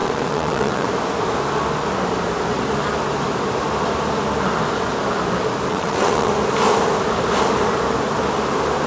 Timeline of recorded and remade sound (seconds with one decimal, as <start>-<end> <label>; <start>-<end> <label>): 0.0-0.9 remade; 0.9-5.7 recorded; 5.7-6.3 remade; 6.3-8.9 recorded